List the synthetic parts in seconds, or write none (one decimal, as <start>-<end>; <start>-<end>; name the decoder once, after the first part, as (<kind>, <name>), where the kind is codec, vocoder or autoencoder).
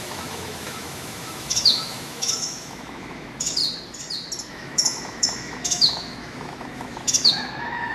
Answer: 0.0-3.6 (autoencoder, DAC-VAE); 4.5-7.9